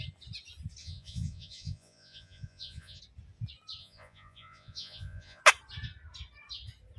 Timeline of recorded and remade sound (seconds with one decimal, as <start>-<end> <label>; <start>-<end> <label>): 0.0-0.8 recorded; 0.8-3.0 remade; 3.0-3.8 recorded; 3.8-5.4 remade; 5.4-7.0 recorded